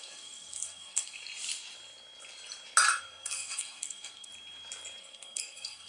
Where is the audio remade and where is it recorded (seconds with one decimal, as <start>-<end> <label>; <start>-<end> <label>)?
0.0-1.2 remade; 1.2-3.0 recorded; 3.0-4.3 remade; 4.3-5.0 recorded; 5.0-5.9 remade